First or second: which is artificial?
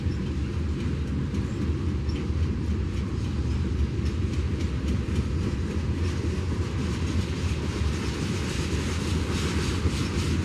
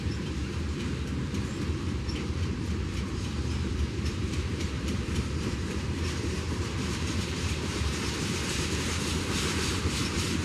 second